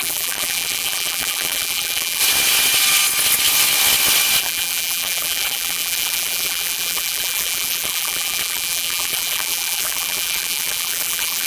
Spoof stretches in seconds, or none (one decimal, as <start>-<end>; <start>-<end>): 0.0-2.2; 4.4-11.5

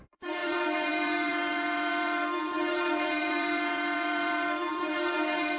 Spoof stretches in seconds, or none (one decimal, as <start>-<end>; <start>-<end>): 0.0-5.6

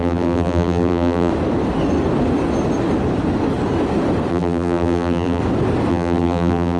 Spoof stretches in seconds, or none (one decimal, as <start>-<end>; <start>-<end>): 0.0-1.3; 4.3-5.4; 5.9-6.8

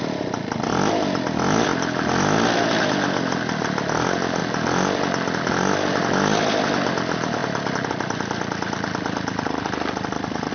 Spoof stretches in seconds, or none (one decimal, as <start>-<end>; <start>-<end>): 7.4-10.5

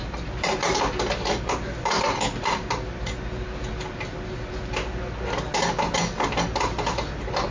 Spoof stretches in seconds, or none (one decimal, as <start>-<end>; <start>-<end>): none